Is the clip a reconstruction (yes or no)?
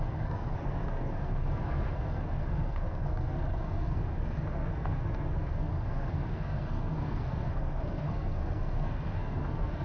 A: yes